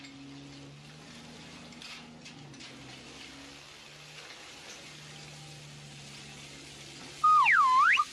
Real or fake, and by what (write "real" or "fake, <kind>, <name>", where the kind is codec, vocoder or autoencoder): real